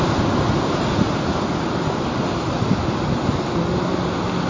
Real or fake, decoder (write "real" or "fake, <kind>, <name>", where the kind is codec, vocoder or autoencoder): real